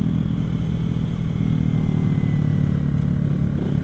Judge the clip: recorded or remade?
recorded